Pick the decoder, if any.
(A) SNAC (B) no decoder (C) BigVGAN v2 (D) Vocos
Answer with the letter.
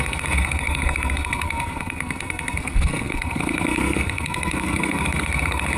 A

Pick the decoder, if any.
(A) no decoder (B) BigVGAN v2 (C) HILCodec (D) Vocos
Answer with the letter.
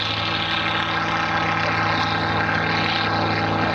A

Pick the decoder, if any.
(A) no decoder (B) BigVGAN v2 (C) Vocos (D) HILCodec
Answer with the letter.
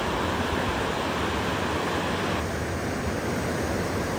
A